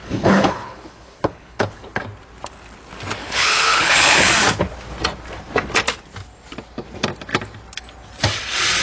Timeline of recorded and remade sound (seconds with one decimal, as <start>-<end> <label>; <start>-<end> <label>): 0.0-2.0 remade; 2.0-3.2 recorded; 3.2-4.3 remade; 4.3-8.8 recorded